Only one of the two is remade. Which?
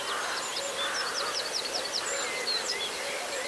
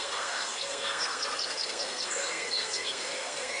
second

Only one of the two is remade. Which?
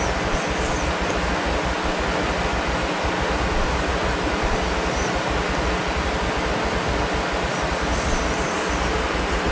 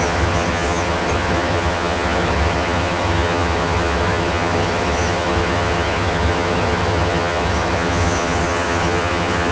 second